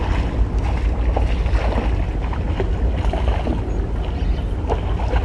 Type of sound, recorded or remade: recorded